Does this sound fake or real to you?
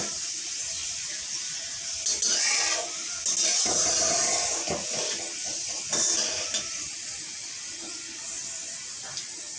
real